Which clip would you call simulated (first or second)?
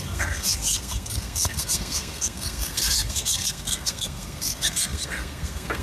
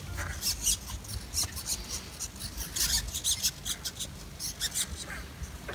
first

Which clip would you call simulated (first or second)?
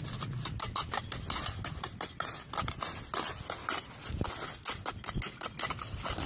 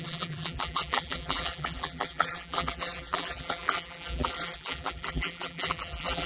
second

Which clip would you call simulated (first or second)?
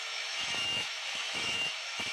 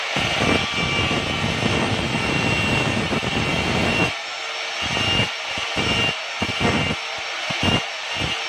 first